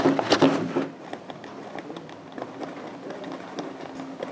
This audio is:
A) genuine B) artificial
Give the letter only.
A